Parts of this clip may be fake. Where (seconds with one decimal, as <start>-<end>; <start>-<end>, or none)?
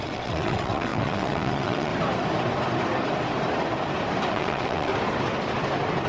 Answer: 0.0-1.9; 4.3-4.9